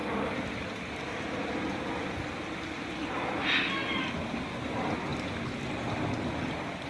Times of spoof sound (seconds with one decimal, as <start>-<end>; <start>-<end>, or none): none